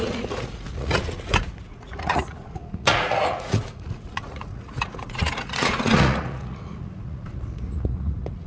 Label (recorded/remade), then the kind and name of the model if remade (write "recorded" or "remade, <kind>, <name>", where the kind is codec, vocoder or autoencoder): remade, vocoder, Vocos